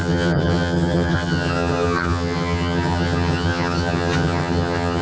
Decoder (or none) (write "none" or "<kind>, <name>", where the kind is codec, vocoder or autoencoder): vocoder, HiFi-GAN